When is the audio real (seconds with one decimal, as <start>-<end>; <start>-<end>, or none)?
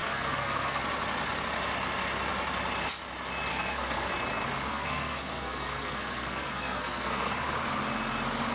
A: 0.8-3.5; 4.1-4.7; 7.5-8.5